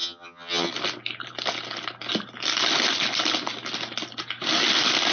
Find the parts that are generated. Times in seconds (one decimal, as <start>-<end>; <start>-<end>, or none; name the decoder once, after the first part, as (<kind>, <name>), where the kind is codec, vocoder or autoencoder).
0.0-0.7 (vocoder, HiFi-GAN)